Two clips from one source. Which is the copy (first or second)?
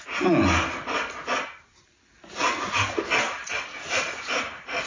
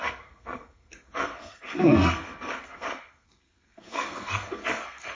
second